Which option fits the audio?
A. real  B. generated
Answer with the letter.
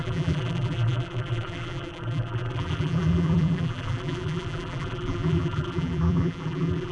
B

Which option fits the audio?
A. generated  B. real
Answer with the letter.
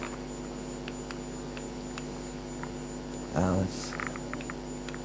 B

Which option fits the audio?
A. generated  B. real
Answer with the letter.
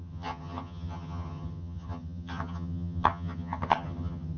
A